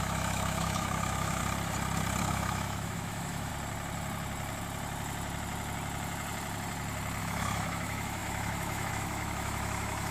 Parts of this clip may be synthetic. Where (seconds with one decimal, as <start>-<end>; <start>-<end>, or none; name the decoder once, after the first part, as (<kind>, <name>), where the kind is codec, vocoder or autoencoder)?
0.0-1.4 (autoencoder, DAC-VAE); 2.2-3.5; 7.2-10.1